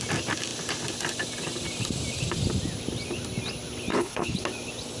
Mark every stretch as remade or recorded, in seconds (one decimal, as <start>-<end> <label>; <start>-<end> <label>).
0.0-3.9 recorded; 3.9-4.4 remade; 4.4-5.0 recorded